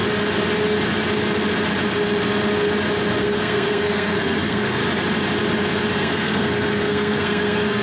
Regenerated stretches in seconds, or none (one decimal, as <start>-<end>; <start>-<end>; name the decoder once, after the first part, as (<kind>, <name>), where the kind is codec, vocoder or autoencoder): 3.2-4.8 (codec, SNAC); 6.0-7.8